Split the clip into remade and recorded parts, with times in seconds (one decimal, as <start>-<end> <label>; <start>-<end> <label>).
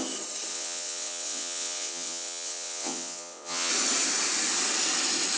0.0-0.5 recorded; 0.5-3.7 remade; 3.7-5.4 recorded